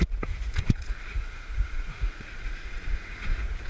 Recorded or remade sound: remade